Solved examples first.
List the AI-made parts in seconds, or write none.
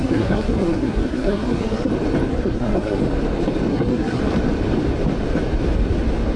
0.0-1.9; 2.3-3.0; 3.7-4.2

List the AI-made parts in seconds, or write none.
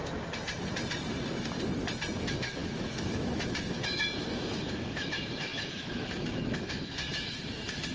2.2-7.9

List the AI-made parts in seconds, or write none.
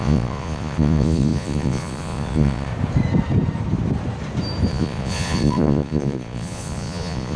0.0-2.7; 4.7-7.4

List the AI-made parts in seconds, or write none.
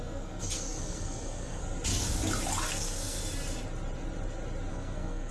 0.0-1.6; 2.7-3.2; 4.7-5.3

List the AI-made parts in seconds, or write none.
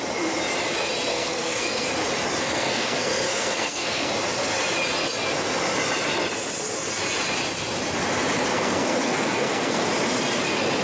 1.1-1.9; 2.4-4.1; 8.5-9.8